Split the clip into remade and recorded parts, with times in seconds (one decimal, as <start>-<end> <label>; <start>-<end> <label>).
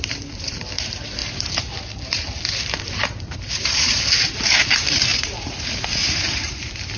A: 0.0-7.0 remade